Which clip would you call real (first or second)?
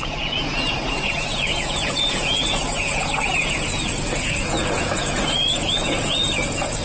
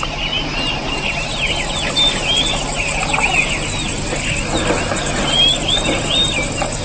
second